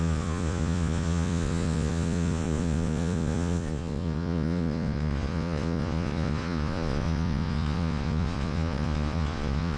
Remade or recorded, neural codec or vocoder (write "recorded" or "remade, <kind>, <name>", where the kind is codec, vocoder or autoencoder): remade, vocoder, Vocos